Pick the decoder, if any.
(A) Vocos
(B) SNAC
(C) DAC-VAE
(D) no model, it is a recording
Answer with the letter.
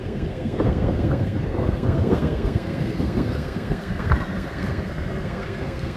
B